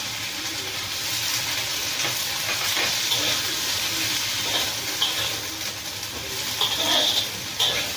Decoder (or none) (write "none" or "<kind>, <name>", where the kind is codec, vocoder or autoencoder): vocoder, BigVGAN v2